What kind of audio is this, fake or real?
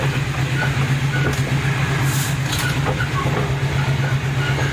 real